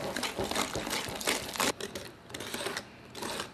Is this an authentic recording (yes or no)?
yes